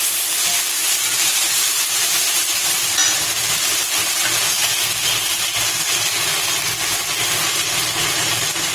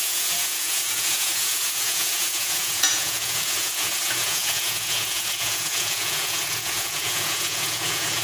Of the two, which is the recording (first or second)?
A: first